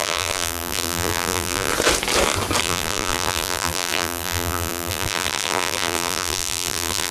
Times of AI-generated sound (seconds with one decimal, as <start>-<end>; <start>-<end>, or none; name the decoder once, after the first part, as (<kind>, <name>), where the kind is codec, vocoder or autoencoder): 0.0-1.7 (vocoder, BigVGAN v2); 2.6-7.1